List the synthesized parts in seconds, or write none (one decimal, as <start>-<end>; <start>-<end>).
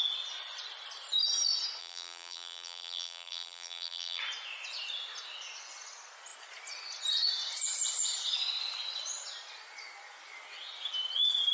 1.8-4.2